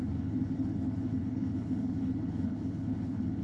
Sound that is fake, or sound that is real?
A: fake